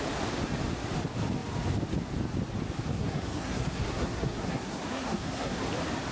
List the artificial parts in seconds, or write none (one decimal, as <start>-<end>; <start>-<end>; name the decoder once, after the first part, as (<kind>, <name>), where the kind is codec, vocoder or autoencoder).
2.9-5.6 (codec, SNAC)